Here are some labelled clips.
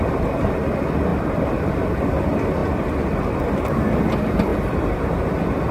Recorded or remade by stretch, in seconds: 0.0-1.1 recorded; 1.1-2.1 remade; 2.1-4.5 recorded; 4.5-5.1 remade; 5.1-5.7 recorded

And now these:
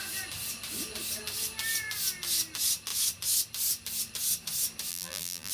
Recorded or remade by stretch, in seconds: 0.0-4.9 recorded; 4.9-5.5 remade

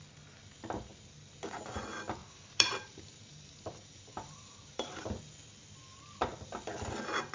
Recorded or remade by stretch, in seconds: 0.0-2.2 recorded; 2.2-5.2 remade; 5.2-7.3 recorded